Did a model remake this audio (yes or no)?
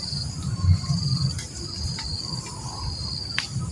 yes